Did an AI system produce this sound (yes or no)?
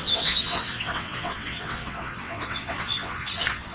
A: yes